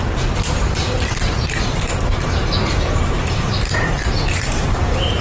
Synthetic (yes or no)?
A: yes